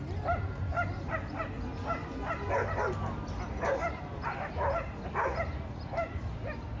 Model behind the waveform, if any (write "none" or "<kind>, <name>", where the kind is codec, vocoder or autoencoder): none